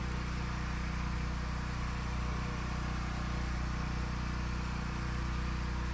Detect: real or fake real